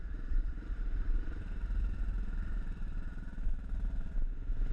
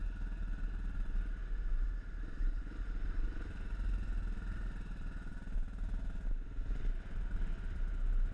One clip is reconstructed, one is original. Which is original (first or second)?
second